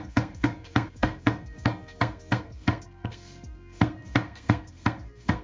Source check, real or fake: fake